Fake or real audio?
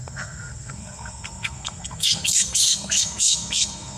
fake